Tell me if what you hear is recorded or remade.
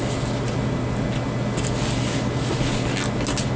recorded